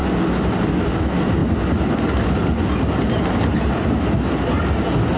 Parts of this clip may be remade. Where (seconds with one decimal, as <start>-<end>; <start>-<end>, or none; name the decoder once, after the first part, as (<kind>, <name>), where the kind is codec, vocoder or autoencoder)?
none

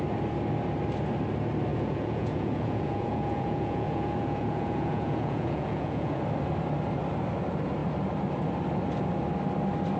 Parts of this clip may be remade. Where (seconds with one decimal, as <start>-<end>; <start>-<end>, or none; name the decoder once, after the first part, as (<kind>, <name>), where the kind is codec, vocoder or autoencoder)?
1.7-6.2 (vocoder, Vocos)